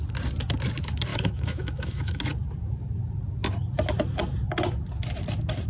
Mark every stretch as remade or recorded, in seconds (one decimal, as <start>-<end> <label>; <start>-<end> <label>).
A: 0.0-1.1 recorded; 1.1-2.2 remade; 2.2-5.7 recorded